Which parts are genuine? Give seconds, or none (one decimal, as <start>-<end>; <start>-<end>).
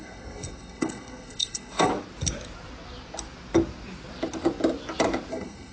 1.9-5.3